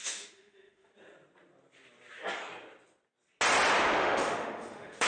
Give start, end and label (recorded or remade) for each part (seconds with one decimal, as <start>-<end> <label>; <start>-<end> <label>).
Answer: 0.0-0.9 remade; 0.9-4.0 recorded; 4.0-5.1 remade